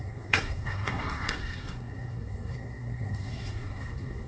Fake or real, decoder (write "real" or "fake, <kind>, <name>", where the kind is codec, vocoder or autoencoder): fake, codec, SNAC